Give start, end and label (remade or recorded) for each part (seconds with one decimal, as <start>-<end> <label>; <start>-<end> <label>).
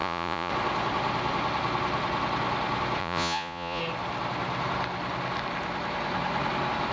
0.0-0.5 remade; 0.5-3.0 recorded; 3.0-3.8 remade; 3.8-6.9 recorded